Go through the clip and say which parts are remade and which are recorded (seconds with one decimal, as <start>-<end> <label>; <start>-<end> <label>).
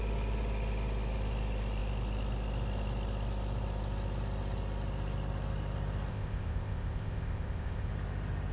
0.0-6.1 recorded; 6.1-7.9 remade; 7.9-8.5 recorded